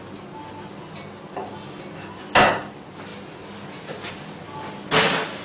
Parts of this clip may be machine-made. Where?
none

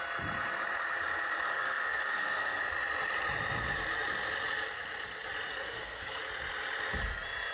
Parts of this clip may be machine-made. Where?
1.5-2.6; 5.5-6.2

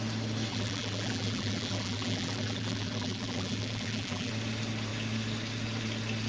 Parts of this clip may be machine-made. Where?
0.5-4.3

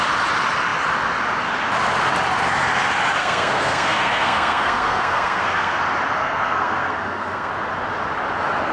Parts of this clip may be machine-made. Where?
3.2-5.8; 6.2-7.5

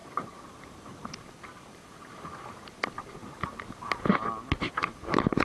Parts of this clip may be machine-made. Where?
0.0-1.1; 3.2-4.0